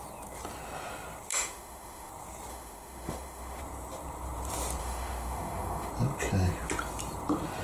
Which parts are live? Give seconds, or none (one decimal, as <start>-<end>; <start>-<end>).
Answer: 0.0-1.3; 2.1-2.5; 3.6-4.8; 5.9-7.6